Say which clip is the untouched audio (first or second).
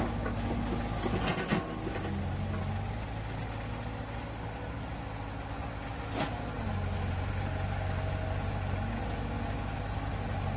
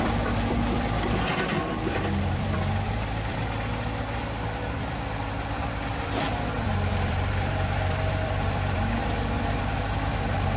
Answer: first